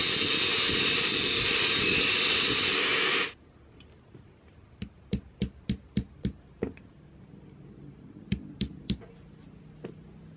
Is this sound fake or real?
real